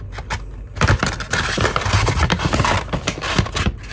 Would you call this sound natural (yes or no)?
yes